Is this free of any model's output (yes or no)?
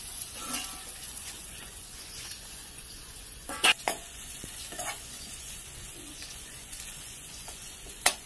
no